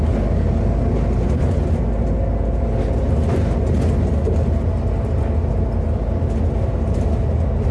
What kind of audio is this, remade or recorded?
recorded